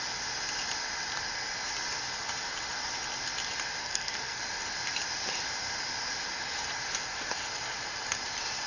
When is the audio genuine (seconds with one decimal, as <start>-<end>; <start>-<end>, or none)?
0.0-3.8; 4.4-8.7